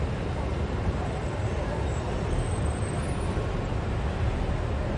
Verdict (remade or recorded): recorded